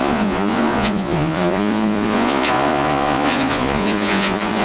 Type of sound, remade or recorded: remade